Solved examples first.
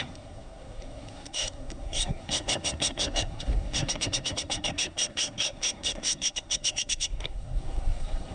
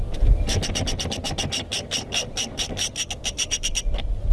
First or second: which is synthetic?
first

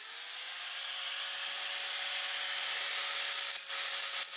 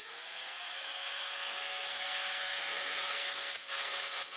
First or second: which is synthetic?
second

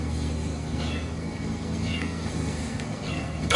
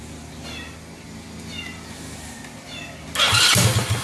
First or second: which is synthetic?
first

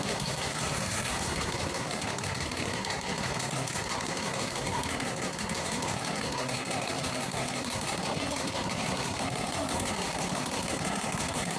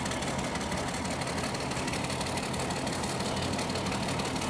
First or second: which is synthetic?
first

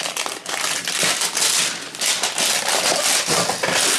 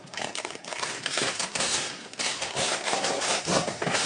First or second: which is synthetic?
second